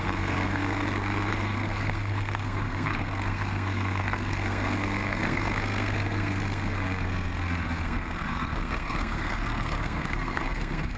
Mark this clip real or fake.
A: fake